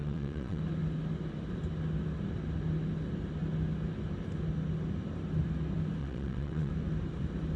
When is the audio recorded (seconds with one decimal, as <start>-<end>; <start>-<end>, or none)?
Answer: 0.6-6.0; 6.7-7.6